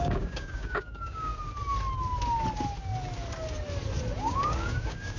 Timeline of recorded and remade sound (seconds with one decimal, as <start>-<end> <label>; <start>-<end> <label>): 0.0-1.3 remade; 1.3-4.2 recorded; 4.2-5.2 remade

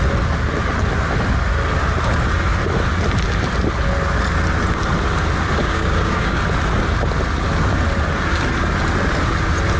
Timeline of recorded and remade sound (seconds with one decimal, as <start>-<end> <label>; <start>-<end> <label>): 0.0-5.6 recorded; 5.6-6.4 remade; 6.4-9.8 recorded

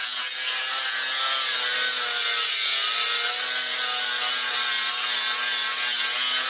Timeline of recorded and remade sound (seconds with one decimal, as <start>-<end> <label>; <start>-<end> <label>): 0.0-6.5 recorded